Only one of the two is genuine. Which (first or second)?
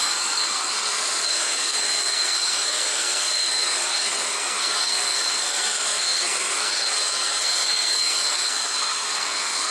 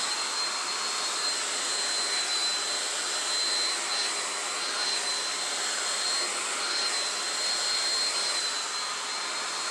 second